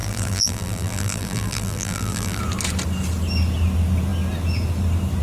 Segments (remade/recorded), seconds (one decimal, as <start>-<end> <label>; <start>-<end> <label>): 0.0-2.4 remade; 2.4-5.2 recorded